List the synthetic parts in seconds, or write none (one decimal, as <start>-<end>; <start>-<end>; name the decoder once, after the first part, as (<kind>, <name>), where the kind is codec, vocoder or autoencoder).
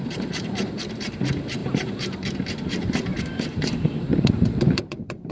0.0-5.3 (vocoder, BigVGAN v2)